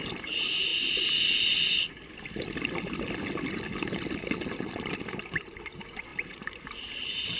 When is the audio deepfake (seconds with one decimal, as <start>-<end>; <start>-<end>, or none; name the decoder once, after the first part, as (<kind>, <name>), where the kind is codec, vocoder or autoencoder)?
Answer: 0.0-0.7 (vocoder, BigVGAN v2); 5.1-7.4